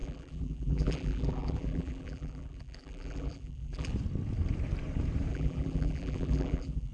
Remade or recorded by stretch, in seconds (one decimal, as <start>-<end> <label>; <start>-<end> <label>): 0.0-3.9 remade; 3.9-5.3 recorded; 5.3-6.9 remade